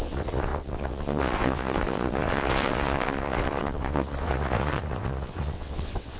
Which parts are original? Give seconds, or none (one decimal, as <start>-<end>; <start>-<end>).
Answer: none